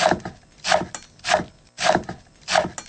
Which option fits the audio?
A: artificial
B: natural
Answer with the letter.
B